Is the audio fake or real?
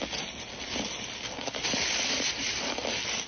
real